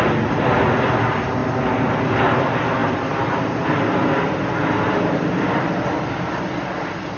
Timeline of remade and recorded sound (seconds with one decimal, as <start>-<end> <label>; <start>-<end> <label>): 0.0-7.2 recorded